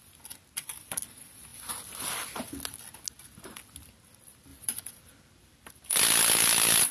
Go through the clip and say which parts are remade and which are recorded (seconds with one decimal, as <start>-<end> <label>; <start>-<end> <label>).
0.0-1.5 recorded; 1.5-2.8 remade; 2.8-4.5 recorded; 4.5-6.0 remade; 6.0-6.9 recorded